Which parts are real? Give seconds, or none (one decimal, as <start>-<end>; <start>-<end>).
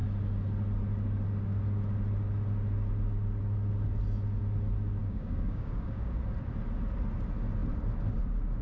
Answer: 0.0-5.0; 6.2-8.6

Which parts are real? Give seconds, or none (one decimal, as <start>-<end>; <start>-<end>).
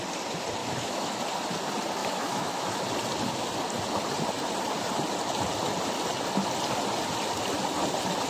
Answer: 0.0-0.6; 1.2-2.0; 2.8-8.3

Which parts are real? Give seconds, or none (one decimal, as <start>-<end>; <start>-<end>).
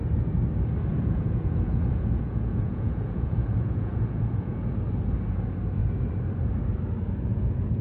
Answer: 0.0-0.9; 4.6-7.3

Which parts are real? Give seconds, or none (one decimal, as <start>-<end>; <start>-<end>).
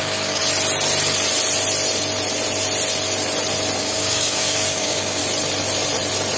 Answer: 0.4-3.8; 5.2-6.4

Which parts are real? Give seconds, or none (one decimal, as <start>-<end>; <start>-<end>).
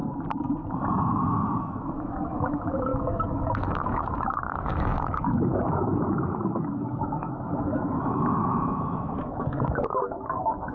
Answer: 0.0-1.6